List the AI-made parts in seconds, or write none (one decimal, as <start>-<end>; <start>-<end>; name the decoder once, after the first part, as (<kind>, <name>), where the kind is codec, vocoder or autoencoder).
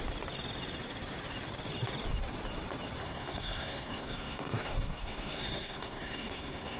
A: 3.0-6.8 (codec, SNAC)